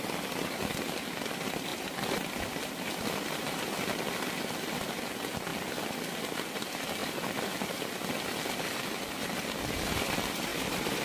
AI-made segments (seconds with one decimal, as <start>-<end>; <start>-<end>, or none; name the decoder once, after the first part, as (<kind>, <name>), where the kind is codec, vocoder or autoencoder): 1.7-2.5 (vocoder, BigVGAN v2); 10.5-11.0